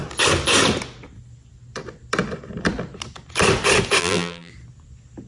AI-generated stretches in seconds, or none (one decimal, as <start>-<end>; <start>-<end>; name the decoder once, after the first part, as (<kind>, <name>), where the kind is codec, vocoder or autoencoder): 4.0-4.5 (vocoder, BigVGAN v2)